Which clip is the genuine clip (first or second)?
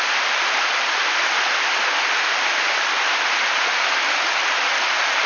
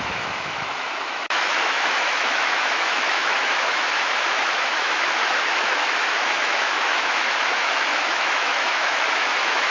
first